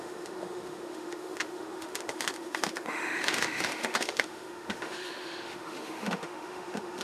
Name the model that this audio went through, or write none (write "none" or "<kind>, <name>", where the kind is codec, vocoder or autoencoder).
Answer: autoencoder, DAC-VAE